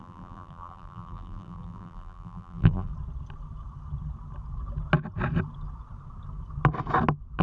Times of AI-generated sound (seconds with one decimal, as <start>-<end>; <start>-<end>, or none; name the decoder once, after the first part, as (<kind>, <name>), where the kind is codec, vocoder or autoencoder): 0.0-2.9 (vocoder, BigVGAN v2)